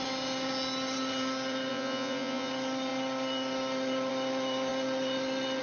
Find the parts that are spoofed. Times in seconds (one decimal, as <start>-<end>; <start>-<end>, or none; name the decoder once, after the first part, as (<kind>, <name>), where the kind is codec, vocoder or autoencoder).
1.7-2.5 (vocoder, Vocos)